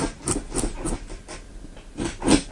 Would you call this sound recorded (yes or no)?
yes